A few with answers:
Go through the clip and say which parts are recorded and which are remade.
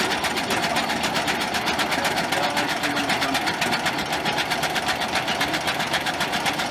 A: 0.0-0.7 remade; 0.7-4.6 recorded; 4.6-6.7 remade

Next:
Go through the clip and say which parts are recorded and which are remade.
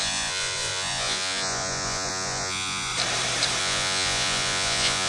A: 0.0-2.9 remade; 2.9-3.6 recorded; 3.6-5.1 remade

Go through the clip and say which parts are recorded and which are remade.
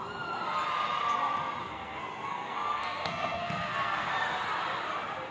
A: 0.0-1.6 recorded; 1.6-4.1 remade; 4.1-5.3 recorded